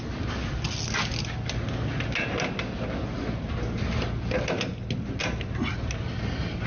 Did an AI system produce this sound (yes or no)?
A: no